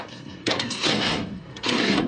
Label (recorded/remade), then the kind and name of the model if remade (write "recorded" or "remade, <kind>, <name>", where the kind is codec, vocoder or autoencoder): remade, codec, SNAC